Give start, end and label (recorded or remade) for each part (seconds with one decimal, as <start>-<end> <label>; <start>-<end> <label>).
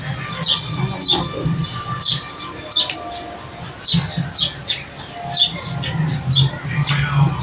0.0-7.4 recorded